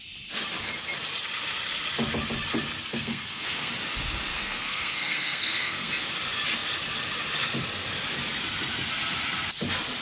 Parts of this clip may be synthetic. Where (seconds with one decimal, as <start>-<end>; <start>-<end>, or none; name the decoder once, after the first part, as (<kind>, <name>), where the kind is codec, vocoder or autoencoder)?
2.9-3.7 (codec, SNAC); 4.3-5.9